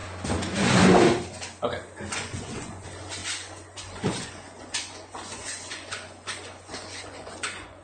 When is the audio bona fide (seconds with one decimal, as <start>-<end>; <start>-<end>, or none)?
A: 0.0-2.1

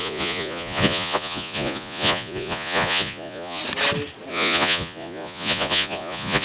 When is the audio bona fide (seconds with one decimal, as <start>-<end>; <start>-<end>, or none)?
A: 3.6-4.3

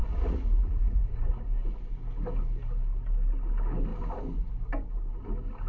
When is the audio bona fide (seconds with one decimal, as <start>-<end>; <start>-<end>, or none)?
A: 1.3-5.7

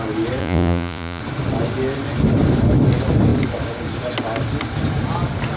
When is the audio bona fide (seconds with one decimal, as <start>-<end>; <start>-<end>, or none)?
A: 0.0-0.4; 1.2-5.6

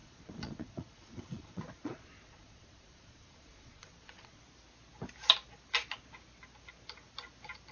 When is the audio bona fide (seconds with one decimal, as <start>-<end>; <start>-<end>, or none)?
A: 4.4-7.7

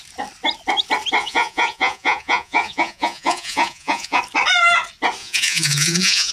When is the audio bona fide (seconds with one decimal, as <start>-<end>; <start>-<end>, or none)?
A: 0.0-1.2; 4.2-5.2

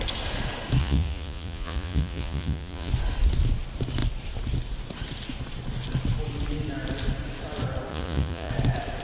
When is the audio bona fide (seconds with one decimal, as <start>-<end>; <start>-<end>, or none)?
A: 0.0-0.8; 2.9-7.9; 8.5-9.0

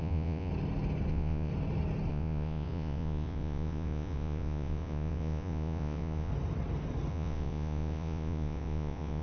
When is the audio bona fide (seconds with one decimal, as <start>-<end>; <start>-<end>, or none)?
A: 0.5-1.1; 1.5-2.1; 6.3-7.1